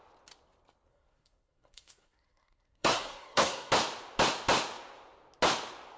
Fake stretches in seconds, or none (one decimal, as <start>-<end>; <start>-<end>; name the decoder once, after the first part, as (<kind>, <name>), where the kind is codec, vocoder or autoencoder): 0.9-3.7 (codec, SNAC)

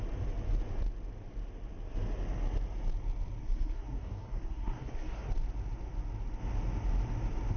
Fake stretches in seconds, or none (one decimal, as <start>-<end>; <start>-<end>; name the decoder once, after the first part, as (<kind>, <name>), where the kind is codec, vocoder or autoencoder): 3.4-5.3 (codec, SNAC)

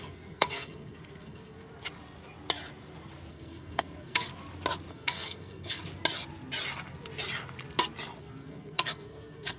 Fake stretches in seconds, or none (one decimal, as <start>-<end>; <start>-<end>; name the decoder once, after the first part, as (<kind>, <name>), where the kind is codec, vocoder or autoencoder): 0.0-1.6 (codec, SNAC); 3.3-4.3; 4.9-5.8; 8.2-9.6

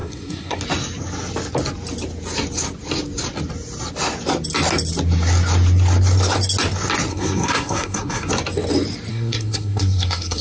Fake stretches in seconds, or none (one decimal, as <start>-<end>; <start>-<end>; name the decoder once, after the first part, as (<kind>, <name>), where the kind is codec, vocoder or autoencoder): 0.0-0.6 (codec, SNAC); 7.1-8.3; 9.1-10.4

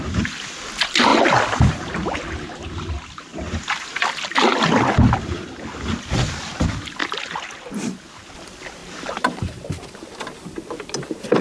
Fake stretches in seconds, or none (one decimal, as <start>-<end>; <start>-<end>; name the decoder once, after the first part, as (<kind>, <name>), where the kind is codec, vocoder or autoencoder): 8.8-9.9 (vocoder, BigVGAN v2)

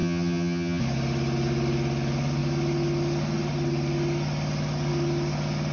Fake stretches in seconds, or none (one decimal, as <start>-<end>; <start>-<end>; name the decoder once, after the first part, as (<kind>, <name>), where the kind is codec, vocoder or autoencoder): 0.0-0.8 (vocoder, HiFi-GAN)

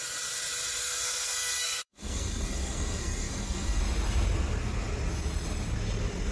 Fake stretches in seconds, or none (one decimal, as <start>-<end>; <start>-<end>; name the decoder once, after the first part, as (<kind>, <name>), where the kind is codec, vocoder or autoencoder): 0.8-3.8 (codec, SNAC)